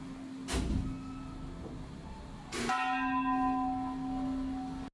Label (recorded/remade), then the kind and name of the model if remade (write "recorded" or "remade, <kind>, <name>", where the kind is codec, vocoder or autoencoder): recorded